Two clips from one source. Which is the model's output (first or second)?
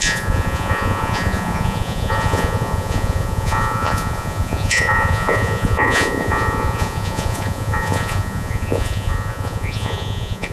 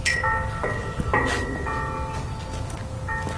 first